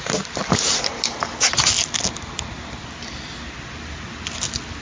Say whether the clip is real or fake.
real